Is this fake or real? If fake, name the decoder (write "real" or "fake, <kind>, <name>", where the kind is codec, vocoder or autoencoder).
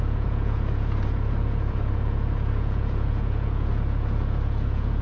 fake, vocoder, Vocos